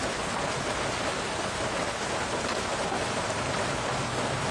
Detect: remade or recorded recorded